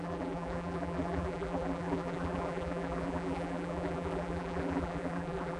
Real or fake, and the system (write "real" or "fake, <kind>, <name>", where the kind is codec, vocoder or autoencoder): fake, vocoder, BigVGAN v2